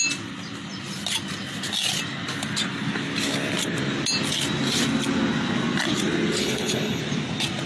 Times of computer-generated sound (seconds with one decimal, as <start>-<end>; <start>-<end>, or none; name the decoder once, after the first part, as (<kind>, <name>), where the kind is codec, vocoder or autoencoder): 6.4-7.0 (codec, HILCodec)